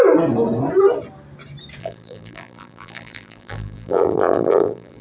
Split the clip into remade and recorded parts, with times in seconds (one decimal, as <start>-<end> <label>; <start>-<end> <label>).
0.0-1.8 recorded; 1.8-5.0 remade